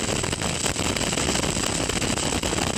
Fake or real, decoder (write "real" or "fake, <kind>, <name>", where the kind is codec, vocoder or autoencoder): real